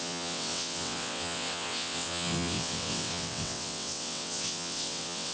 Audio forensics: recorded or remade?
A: remade